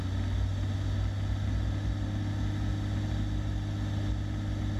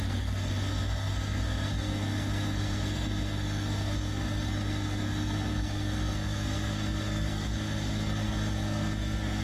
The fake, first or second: second